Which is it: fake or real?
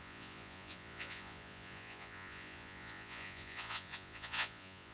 fake